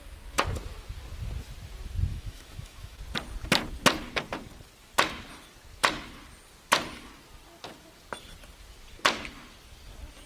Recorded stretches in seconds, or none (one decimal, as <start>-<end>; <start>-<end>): 0.0-2.1; 3.0-10.3